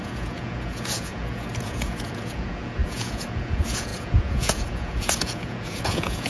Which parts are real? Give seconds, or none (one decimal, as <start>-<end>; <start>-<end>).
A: none